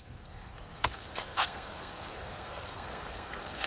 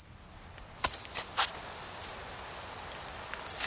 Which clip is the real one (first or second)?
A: second